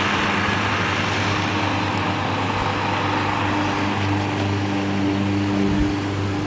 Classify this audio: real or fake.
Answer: real